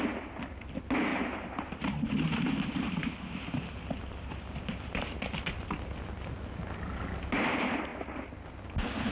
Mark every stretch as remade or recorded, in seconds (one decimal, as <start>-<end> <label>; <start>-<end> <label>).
0.0-1.1 recorded; 1.1-3.1 remade; 3.1-9.1 recorded